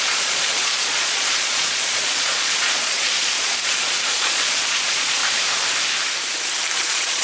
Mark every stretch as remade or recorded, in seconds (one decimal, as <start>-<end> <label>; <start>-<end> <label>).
0.0-5.2 remade; 5.2-6.8 recorded; 6.8-7.2 remade